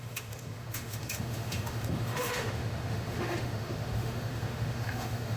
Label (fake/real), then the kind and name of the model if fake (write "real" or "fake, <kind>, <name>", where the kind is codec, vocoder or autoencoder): fake, autoencoder, DAC-VAE